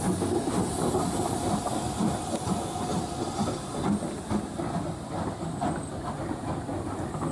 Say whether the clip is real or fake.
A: real